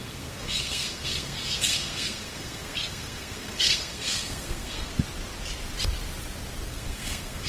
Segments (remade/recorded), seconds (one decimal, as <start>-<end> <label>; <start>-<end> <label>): 0.0-4.9 remade; 4.9-6.7 recorded; 6.7-7.5 remade